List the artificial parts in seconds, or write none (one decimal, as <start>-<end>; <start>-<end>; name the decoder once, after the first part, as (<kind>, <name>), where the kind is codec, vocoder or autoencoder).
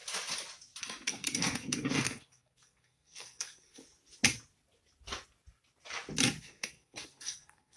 0.8-3.8 (codec, SNAC); 6.4-7.8